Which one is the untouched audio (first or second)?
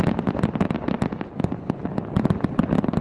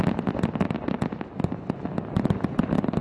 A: second